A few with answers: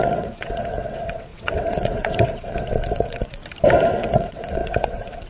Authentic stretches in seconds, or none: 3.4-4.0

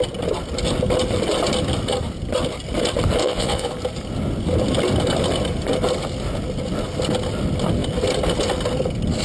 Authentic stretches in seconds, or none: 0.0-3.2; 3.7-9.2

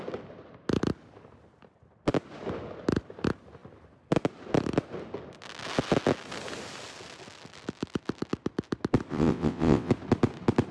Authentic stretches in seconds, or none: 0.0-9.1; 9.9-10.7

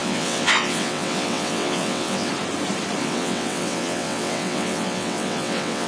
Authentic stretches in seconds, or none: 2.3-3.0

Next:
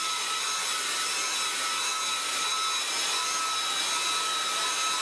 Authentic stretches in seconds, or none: 0.0-5.0